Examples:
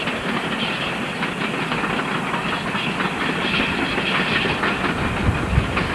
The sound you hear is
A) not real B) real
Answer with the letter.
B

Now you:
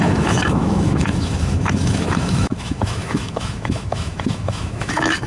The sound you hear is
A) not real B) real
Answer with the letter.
A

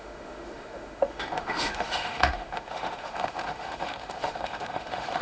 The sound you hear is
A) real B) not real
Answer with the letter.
B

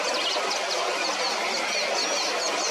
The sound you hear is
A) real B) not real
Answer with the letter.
A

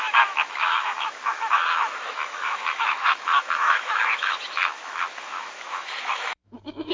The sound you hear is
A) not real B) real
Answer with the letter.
A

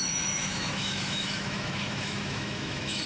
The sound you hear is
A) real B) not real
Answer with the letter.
B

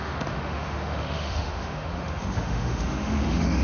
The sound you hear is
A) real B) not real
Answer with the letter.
B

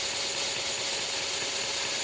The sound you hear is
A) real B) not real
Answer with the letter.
A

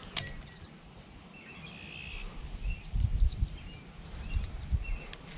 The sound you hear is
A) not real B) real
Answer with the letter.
B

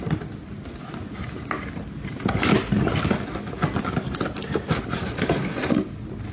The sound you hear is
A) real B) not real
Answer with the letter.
A